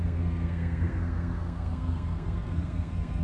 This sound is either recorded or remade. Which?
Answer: remade